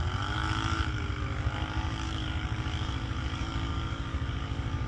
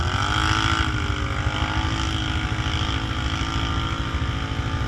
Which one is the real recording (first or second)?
second